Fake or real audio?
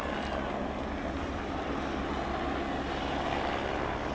real